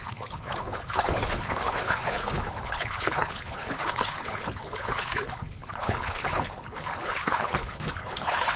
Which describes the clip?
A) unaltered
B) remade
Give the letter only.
B